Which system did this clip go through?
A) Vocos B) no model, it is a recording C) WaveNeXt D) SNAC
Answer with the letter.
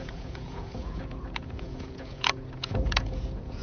A